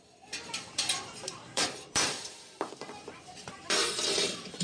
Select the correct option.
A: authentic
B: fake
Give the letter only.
B